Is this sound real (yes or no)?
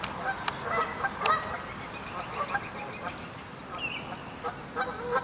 yes